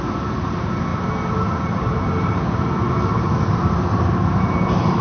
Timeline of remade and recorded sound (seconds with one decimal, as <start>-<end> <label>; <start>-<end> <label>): 0.0-5.0 remade